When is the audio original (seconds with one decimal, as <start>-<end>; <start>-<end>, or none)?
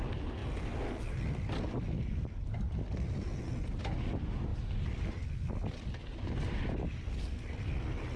0.0-8.2